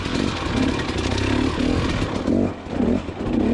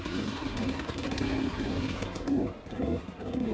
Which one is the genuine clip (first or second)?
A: first